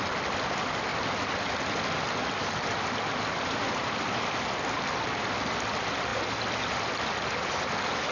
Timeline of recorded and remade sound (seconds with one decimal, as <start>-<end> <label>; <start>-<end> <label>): 0.0-8.1 recorded